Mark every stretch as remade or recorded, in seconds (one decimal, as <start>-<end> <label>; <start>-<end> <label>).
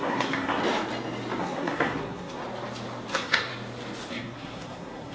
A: 0.0-0.6 remade; 0.6-1.4 recorded; 1.4-2.4 remade; 2.4-3.1 recorded; 3.1-3.5 remade; 3.5-4.1 recorded; 4.1-5.1 remade